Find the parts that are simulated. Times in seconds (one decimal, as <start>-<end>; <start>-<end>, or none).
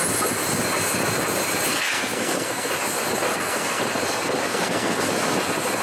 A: 1.7-2.7; 3.3-3.8; 4.5-5.1